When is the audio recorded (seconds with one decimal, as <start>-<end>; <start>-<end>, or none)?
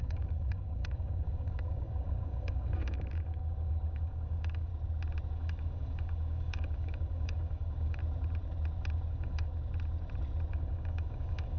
4.7-5.3; 8.0-9.1; 9.5-10.5